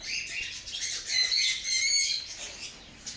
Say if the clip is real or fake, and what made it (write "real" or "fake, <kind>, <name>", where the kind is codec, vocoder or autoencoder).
real